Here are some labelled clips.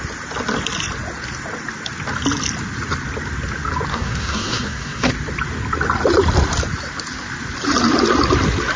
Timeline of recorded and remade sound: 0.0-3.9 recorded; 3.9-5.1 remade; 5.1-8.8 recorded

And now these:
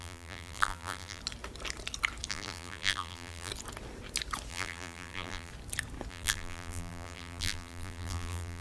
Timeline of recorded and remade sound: 0.0-1.2 remade; 1.2-2.3 recorded; 2.3-3.5 remade; 3.5-4.5 recorded; 4.5-5.5 remade; 5.5-6.1 recorded; 6.1-8.6 remade

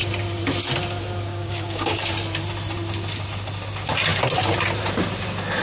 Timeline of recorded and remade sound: 0.0-1.3 recorded; 1.3-2.1 remade; 2.1-5.6 recorded

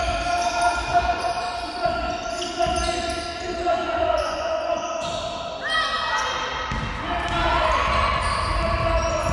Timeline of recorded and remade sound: 0.0-0.9 recorded; 0.9-2.4 remade; 2.4-3.6 recorded; 3.6-5.1 remade; 5.1-9.3 recorded

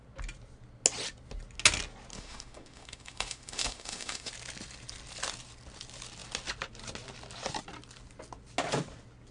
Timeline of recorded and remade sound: 0.0-2.1 recorded; 2.1-4.3 remade; 4.3-9.3 recorded

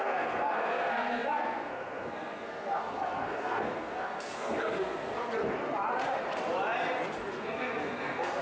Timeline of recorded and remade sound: 0.0-5.1 remade; 5.1-7.3 recorded; 7.3-8.4 remade